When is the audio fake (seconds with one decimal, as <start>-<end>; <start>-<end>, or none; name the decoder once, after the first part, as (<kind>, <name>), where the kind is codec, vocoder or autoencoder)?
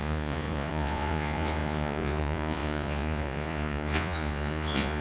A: 0.0-5.0 (vocoder, Vocos)